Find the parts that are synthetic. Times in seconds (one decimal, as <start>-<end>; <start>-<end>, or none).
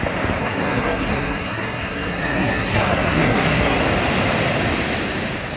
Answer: 0.4-3.8